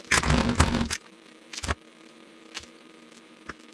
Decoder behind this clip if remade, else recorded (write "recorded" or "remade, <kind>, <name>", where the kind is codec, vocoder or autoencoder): remade, vocoder, BigVGAN v2